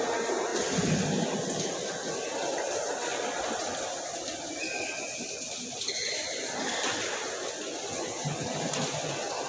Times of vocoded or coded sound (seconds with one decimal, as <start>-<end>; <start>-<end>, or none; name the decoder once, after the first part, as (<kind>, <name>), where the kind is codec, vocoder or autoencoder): none